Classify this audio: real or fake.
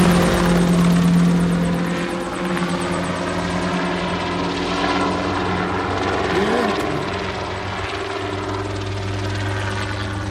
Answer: real